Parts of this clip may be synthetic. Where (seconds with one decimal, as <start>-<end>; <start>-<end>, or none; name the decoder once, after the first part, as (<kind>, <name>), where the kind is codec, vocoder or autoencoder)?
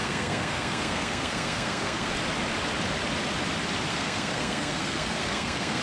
0.0-2.1 (codec, SNAC); 3.9-5.8